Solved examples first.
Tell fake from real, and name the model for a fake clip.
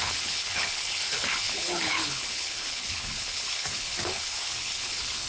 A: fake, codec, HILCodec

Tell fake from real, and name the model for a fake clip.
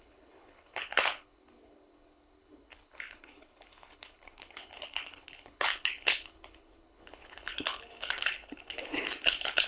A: fake, codec, HILCodec